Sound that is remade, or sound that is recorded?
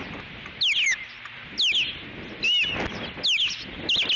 recorded